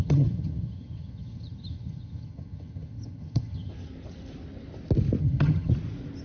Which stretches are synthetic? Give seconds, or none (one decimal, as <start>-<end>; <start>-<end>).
0.0-3.7; 5.2-5.7

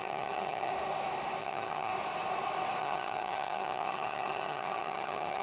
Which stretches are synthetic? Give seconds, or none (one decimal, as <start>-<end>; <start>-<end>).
0.0-0.7; 1.4-1.9; 2.8-5.4

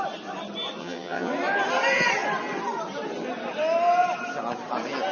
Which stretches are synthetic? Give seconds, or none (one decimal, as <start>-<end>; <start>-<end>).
0.8-1.3